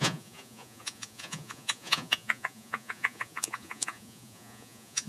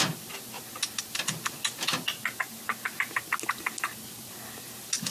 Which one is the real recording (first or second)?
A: second